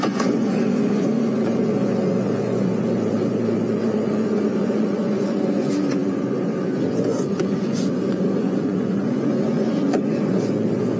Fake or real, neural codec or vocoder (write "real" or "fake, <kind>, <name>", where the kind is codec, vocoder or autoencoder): fake, vocoder, Vocos